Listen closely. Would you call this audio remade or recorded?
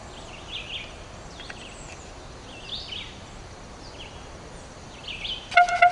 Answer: recorded